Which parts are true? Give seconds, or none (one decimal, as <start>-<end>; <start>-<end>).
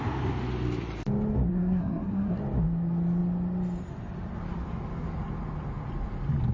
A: 0.0-1.5; 2.4-6.5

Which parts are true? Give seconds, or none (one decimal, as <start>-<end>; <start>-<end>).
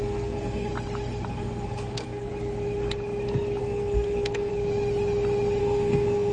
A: 0.7-1.3; 2.3-3.6; 4.5-5.6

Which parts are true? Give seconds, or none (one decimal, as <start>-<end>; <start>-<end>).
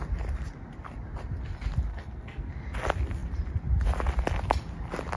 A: 0.0-1.9; 2.5-5.2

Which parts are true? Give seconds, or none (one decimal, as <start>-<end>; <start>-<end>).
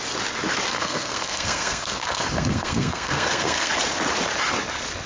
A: 0.0-0.7; 3.7-5.1